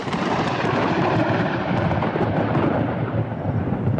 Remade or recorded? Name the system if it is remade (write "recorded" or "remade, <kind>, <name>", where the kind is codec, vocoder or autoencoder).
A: remade, vocoder, BigVGAN v2